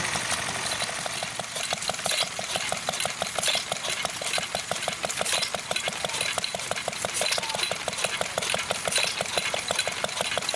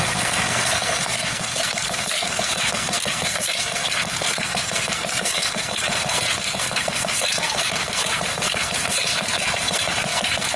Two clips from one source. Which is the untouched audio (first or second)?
first